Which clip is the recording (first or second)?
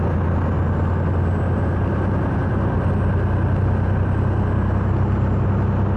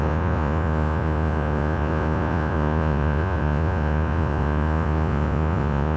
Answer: first